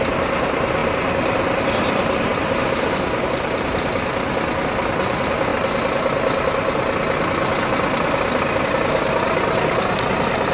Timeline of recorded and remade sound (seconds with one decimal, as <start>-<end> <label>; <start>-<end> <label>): 0.0-2.3 recorded; 2.3-3.2 remade; 3.2-10.5 recorded